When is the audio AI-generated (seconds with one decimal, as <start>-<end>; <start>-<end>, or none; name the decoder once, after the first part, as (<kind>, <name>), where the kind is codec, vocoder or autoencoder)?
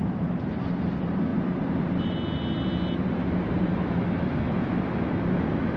3.7-5.8 (autoencoder, DAC-VAE)